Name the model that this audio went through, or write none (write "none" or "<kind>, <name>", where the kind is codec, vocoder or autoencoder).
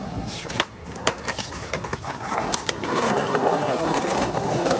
codec, SNAC